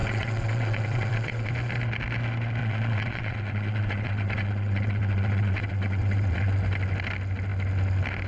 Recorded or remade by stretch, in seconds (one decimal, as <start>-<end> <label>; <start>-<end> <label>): 0.0-1.5 remade; 1.5-2.6 recorded; 2.6-6.5 remade; 6.5-8.3 recorded